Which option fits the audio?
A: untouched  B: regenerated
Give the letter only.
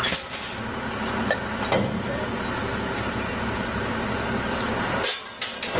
A